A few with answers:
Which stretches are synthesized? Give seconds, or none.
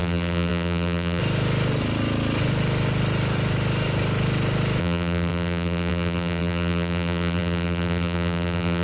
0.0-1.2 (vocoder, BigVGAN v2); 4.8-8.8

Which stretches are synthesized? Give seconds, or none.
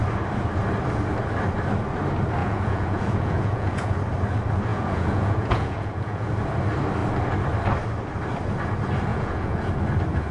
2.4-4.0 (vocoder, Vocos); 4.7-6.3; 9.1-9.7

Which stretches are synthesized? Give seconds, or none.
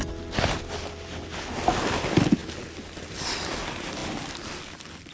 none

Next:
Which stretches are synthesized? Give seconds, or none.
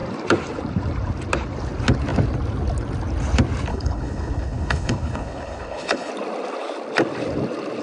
3.7-6.1 (codec, HILCodec)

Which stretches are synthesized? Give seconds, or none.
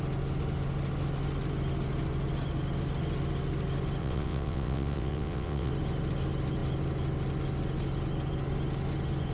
4.0-5.7 (vocoder, WaveNeXt)